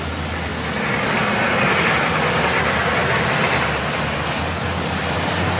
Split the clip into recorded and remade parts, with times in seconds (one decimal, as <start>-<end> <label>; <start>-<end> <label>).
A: 0.0-5.6 recorded